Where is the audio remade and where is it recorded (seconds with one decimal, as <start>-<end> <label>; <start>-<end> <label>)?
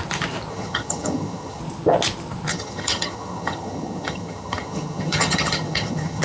0.0-0.5 recorded; 0.5-1.6 remade; 1.6-2.5 recorded; 2.5-6.2 remade